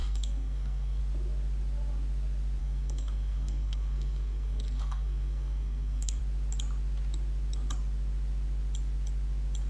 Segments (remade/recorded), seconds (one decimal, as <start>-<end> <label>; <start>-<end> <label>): 0.0-1.0 remade; 1.0-2.6 recorded; 2.6-6.2 remade; 6.2-9.7 recorded

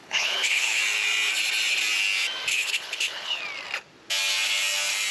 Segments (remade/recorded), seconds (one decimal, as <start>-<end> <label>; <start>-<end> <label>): 0.0-0.8 remade; 0.8-2.5 recorded; 2.5-3.4 remade; 3.4-5.1 recorded

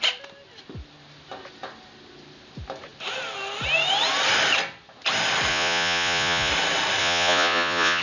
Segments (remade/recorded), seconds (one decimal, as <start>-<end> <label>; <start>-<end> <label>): 0.0-5.5 recorded; 5.5-6.5 remade; 6.5-7.0 recorded; 7.0-8.0 remade

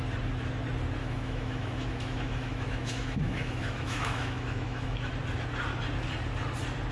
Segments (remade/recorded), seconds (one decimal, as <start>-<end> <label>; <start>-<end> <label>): 0.0-1.0 recorded; 1.0-5.1 remade; 5.1-6.9 recorded

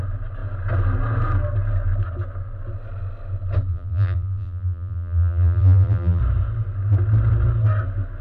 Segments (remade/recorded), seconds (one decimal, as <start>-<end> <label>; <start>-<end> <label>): 0.0-3.7 recorded; 3.7-6.2 remade; 6.2-8.2 recorded

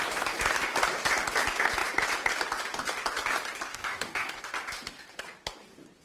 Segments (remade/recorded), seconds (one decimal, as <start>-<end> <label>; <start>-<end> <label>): 0.0-3.7 recorded; 3.7-4.4 remade; 4.4-6.0 recorded

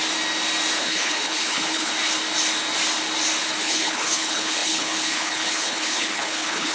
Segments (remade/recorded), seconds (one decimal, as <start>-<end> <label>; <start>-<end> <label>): 0.0-0.8 recorded; 0.8-1.9 remade; 1.9-3.6 recorded; 3.6-6.7 remade